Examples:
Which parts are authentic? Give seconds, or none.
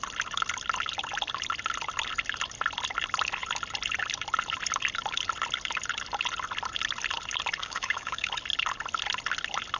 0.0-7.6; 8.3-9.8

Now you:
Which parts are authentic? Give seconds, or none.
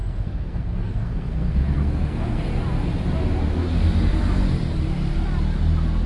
2.5-6.1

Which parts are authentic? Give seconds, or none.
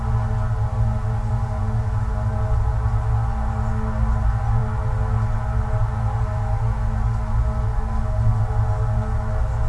0.0-9.7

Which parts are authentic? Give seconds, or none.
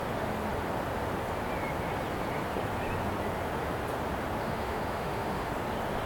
0.0-4.4; 5.5-6.1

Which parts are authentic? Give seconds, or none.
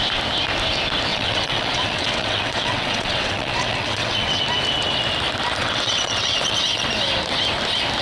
0.0-1.1; 4.4-5.6; 6.9-8.0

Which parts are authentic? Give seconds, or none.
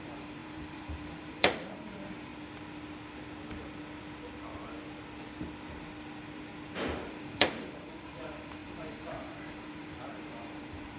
2.3-7.1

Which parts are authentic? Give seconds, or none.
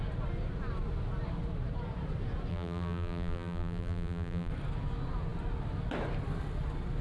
0.0-2.5; 4.5-7.0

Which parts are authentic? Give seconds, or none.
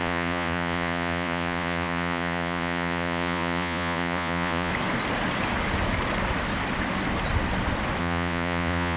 4.7-8.0